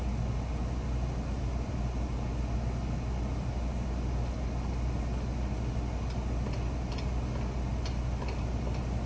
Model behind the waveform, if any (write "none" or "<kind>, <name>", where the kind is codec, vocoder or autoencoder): none